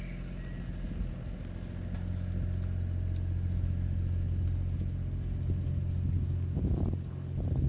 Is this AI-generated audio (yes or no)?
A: no